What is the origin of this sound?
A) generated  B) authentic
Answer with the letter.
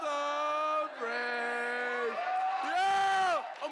B